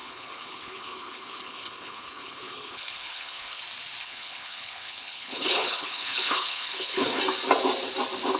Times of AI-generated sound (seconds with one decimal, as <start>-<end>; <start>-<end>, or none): 0.0-3.6; 4.0-7.2